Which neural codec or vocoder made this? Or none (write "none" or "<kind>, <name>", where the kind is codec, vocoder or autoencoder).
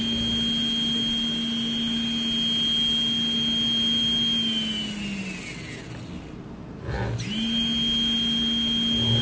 none